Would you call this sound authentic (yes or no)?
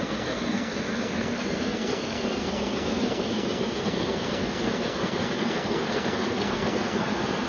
no